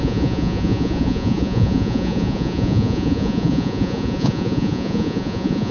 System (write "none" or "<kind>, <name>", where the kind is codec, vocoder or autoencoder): vocoder, Vocos